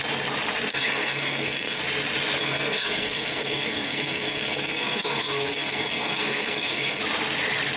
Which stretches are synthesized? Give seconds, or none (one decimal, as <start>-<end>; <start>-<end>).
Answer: 0.7-1.8; 2.4-7.0